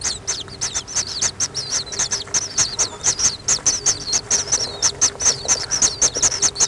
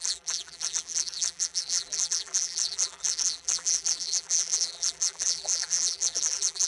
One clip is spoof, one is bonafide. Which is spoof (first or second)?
second